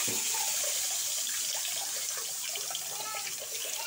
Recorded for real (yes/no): yes